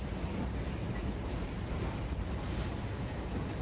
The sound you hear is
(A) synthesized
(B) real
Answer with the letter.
B